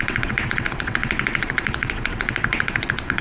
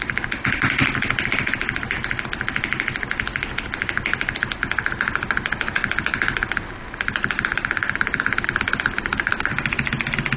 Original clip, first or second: second